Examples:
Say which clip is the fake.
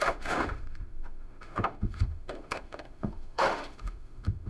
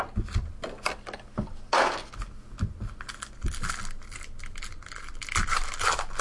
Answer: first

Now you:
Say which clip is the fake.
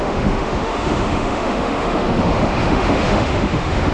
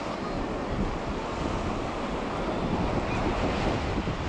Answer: first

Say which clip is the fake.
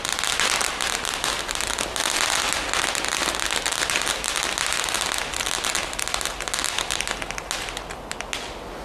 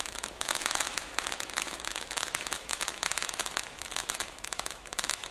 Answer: second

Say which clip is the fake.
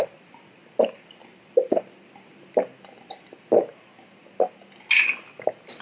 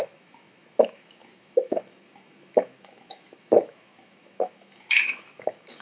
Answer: second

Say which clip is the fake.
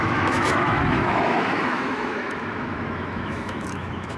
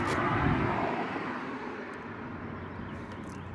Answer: first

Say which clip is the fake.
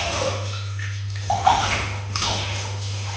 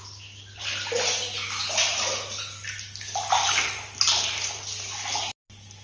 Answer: first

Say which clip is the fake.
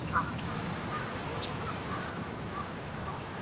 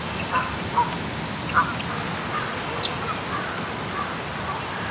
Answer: first